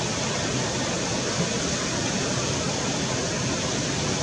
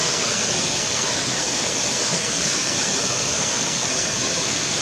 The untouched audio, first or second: first